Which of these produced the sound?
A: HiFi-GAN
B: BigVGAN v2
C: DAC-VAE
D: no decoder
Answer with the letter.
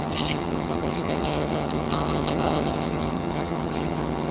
A